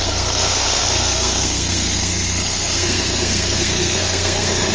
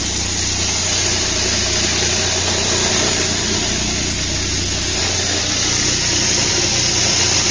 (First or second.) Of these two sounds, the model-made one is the first